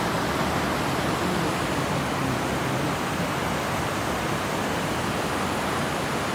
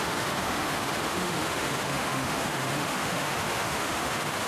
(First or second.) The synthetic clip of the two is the second